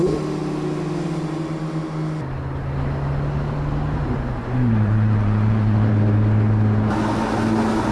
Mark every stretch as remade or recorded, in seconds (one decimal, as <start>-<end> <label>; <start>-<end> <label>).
0.0-4.4 recorded; 4.4-5.9 remade; 5.9-7.9 recorded